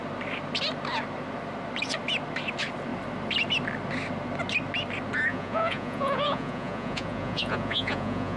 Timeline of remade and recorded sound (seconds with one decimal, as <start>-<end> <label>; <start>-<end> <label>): 0.0-5.3 recorded; 5.3-8.4 remade